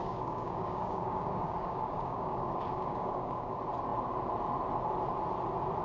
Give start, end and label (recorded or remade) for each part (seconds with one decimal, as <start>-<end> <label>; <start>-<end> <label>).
0.0-3.5 remade; 3.5-5.8 recorded